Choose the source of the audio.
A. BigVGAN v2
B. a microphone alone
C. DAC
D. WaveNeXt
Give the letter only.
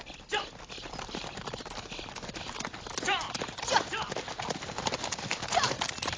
B